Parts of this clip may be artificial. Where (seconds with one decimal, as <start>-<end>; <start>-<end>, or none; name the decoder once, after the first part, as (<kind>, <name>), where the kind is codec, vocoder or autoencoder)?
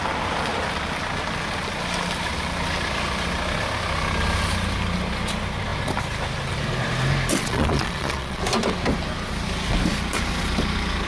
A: 7.4-8.4 (vocoder, Vocos)